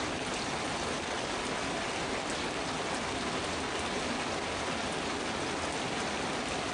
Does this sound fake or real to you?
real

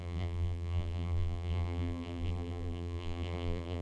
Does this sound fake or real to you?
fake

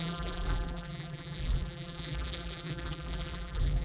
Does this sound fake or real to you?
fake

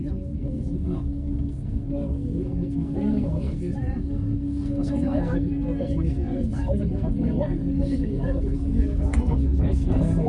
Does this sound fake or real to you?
fake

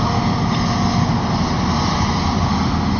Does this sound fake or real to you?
real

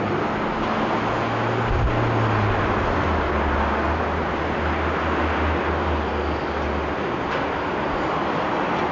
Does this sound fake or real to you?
real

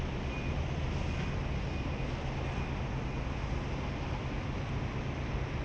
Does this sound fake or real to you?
real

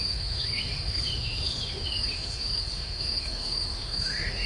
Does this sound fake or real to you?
fake